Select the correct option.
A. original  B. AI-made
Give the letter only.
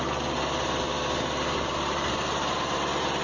A